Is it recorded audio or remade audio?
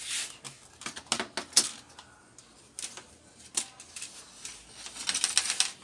recorded